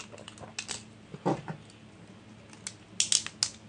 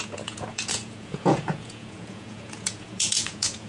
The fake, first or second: second